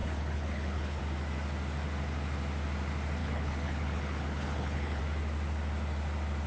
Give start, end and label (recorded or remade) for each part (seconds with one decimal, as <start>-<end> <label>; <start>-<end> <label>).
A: 0.0-1.0 remade; 1.0-3.2 recorded; 3.2-5.0 remade; 5.0-6.5 recorded